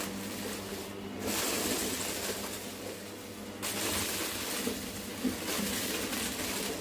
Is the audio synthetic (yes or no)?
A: no